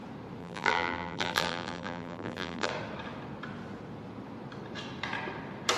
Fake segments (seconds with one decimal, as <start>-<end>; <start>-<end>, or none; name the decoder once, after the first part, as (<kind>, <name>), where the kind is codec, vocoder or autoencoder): 0.4-2.7 (vocoder, BigVGAN v2)